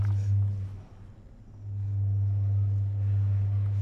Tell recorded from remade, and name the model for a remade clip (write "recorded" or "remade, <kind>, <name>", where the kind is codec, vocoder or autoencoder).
recorded